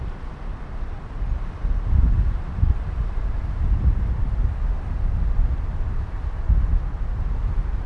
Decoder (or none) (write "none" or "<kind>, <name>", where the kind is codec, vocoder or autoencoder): none